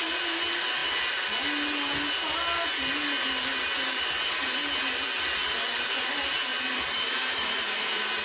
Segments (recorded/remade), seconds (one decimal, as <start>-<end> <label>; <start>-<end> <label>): 0.0-6.5 recorded; 6.5-8.2 remade